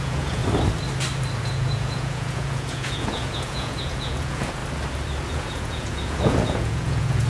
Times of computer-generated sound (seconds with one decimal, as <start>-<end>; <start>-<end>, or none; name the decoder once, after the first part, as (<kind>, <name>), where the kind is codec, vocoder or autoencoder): 0.0-0.4 (vocoder, Vocos); 1.4-4.6; 5.3-7.3